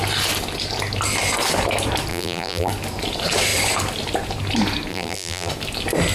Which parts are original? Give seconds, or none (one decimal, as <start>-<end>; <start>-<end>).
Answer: 0.0-2.1; 2.7-4.9; 5.5-6.1